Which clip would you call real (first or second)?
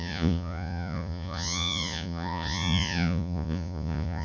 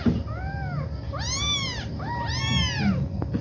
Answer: second